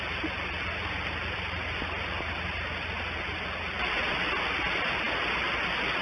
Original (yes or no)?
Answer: yes